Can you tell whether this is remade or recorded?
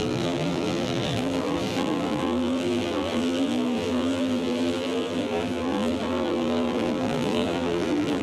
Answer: remade